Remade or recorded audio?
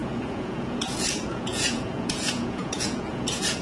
remade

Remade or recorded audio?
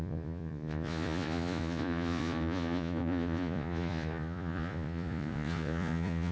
remade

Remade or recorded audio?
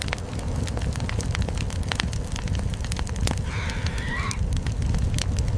recorded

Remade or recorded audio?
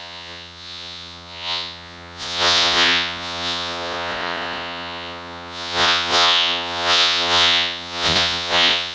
remade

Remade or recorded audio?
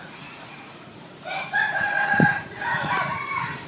remade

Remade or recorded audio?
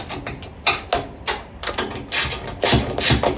recorded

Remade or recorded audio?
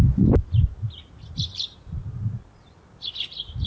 recorded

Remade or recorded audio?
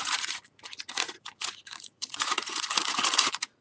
remade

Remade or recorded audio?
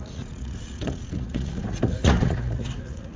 remade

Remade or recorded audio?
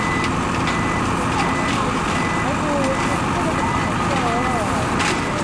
recorded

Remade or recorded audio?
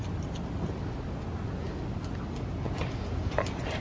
recorded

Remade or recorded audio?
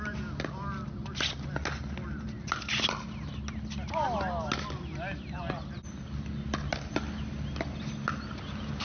recorded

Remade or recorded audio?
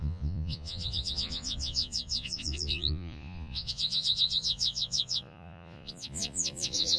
remade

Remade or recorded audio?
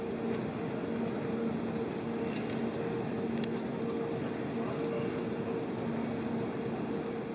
recorded